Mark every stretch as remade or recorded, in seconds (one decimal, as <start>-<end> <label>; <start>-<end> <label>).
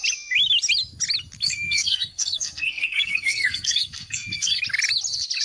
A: 0.0-1.4 recorded; 1.4-4.6 remade; 4.6-5.4 recorded